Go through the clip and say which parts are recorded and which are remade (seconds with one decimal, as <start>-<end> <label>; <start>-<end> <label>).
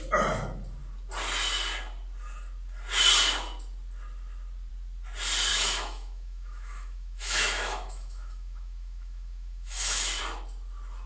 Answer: 0.0-5.5 recorded; 5.5-10.2 remade; 10.2-11.1 recorded